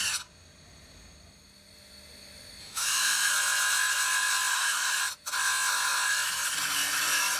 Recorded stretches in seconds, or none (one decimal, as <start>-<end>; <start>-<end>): 0.0-2.6; 3.3-4.5; 5.0-7.4